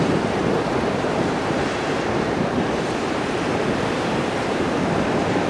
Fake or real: fake